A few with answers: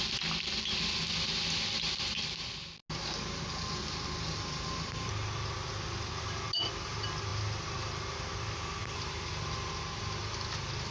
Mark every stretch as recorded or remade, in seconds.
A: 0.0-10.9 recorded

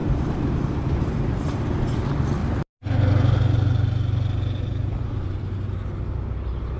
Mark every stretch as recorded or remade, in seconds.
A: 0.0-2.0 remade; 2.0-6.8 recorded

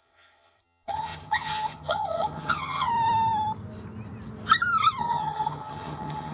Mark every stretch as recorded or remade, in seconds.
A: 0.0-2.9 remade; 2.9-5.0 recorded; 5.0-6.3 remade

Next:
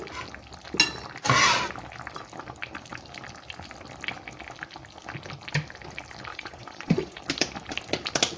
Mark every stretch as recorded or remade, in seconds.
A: 0.0-6.3 recorded; 6.3-7.2 remade; 7.2-8.4 recorded

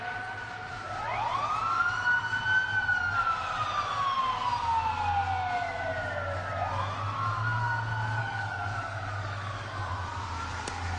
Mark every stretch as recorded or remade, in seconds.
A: 0.0-8.2 recorded; 8.2-9.9 remade; 9.9-11.0 recorded